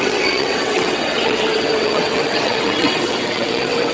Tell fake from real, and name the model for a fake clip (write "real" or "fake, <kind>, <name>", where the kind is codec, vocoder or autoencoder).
fake, vocoder, WaveNeXt